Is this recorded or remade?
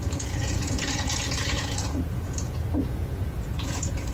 remade